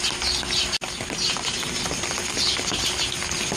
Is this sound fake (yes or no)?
no